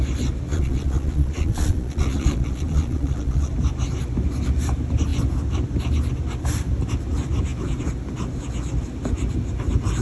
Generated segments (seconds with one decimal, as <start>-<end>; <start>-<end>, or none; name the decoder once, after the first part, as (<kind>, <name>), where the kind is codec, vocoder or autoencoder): 0.5-3.5 (vocoder, Vocos)